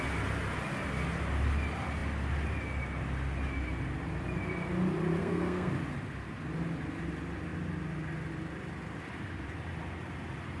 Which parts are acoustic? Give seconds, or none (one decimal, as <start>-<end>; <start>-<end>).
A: 0.0-5.2; 5.7-10.6